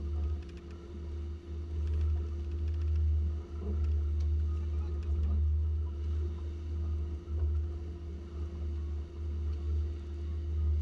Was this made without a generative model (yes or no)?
yes